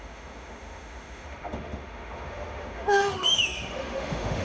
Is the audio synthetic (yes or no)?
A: yes